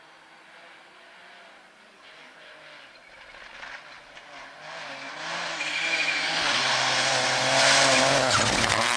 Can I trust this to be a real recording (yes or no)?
yes